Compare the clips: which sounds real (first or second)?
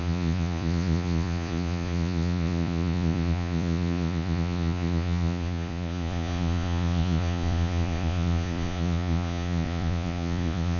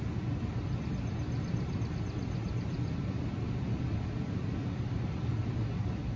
second